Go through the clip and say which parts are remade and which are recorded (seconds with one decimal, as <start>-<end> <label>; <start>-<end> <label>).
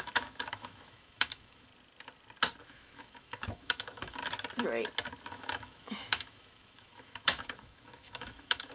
0.0-1.7 remade; 1.7-2.6 recorded; 2.6-4.2 remade; 4.2-5.3 recorded; 5.3-8.7 remade